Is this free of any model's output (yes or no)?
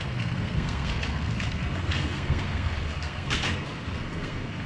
no